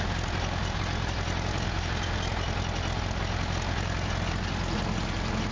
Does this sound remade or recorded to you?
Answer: recorded